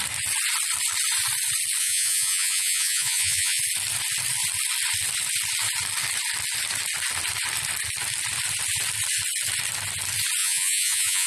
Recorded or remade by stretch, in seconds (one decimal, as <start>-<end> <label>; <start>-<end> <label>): 0.0-1.8 recorded; 1.8-3.6 remade; 3.6-10.4 recorded; 10.4-11.3 remade